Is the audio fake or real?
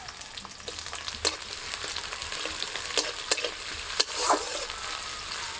real